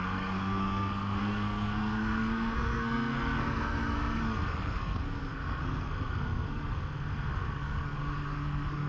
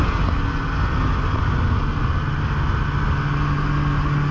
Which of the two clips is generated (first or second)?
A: first